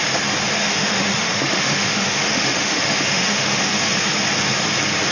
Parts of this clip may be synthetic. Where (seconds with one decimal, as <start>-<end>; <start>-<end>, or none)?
0.6-3.7